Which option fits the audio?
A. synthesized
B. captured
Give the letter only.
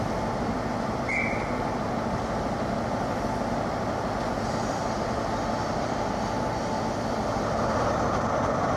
B